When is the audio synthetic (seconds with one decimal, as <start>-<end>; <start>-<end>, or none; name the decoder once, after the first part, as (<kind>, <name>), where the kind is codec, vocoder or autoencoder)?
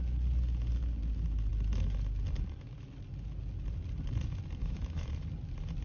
4.6-5.1 (autoencoder, DAC-VAE)